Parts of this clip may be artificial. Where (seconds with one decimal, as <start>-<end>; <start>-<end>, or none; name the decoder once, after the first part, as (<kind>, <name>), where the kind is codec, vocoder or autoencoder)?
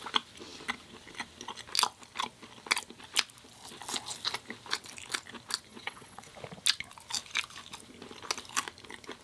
5.7-6.3 (vocoder, WaveNeXt)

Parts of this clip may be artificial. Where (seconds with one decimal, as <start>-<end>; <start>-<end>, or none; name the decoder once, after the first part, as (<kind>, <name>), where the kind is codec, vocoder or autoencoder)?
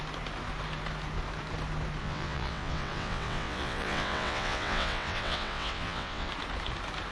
2.0-6.3 (vocoder, WaveNeXt)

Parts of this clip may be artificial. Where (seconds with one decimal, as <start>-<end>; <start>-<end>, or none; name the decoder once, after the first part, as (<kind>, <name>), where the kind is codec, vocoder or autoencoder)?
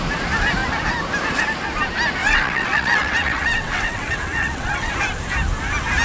2.2-4.9 (vocoder, WaveNeXt)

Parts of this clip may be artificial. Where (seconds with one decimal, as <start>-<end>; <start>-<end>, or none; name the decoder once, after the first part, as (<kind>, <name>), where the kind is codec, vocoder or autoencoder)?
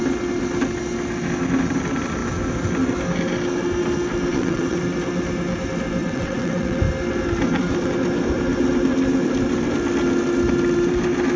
4.3-4.8 (vocoder, WaveNeXt); 6.0-6.8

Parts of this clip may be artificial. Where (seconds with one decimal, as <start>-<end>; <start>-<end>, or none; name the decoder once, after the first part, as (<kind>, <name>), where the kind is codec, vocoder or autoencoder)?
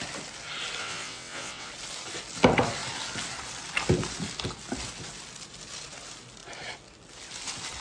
0.8-1.7 (vocoder, WaveNeXt)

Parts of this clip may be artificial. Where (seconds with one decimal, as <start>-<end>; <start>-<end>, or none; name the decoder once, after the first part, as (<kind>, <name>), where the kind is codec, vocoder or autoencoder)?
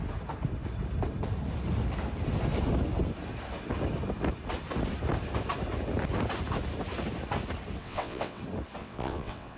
7.8-8.4 (vocoder, WaveNeXt); 8.8-9.6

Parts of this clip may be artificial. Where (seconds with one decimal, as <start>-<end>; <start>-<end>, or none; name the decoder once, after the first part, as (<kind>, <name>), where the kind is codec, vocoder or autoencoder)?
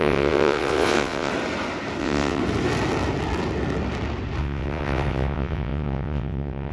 0.0-1.3 (vocoder, WaveNeXt); 2.0-2.4; 4.4-6.7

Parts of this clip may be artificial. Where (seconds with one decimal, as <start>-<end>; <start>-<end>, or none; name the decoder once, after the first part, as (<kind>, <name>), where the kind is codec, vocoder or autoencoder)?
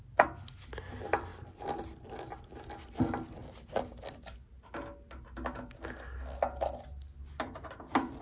none